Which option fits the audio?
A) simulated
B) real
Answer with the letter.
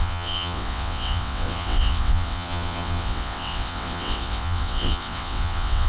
A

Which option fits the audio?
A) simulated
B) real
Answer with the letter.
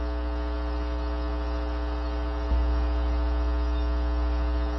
B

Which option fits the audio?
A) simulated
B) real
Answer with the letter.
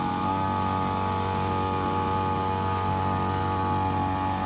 B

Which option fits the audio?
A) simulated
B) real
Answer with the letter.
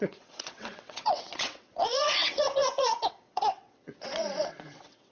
A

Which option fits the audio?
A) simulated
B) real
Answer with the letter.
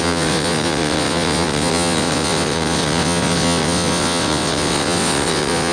A